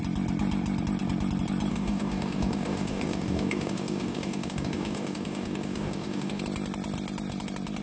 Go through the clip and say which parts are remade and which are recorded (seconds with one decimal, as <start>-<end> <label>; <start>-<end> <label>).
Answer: 0.0-1.7 recorded; 1.7-6.4 remade; 6.4-7.8 recorded